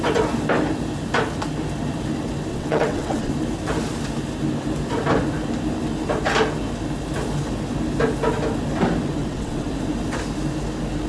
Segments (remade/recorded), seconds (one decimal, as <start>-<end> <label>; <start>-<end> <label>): 0.0-2.5 recorded; 2.5-3.3 remade; 3.3-9.2 recorded; 9.2-9.7 remade; 9.7-11.1 recorded